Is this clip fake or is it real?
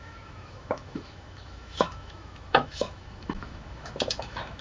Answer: fake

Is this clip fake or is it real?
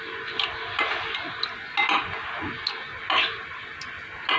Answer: real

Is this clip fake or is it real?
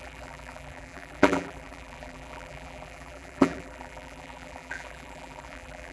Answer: fake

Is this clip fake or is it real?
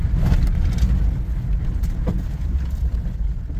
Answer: real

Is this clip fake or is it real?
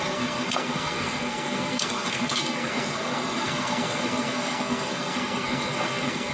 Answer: fake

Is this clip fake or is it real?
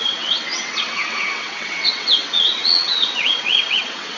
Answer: fake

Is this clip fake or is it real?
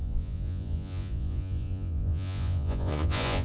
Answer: fake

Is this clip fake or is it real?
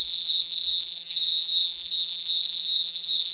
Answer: fake